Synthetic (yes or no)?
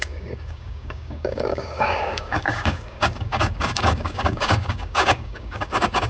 yes